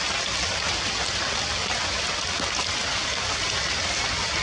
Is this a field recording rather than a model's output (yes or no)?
yes